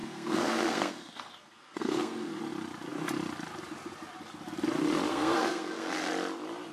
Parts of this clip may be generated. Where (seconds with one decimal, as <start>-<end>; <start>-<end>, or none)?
0.0-2.4; 5.1-6.1